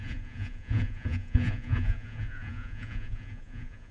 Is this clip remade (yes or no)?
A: yes